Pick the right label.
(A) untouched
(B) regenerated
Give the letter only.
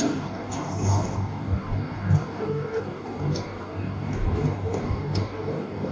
B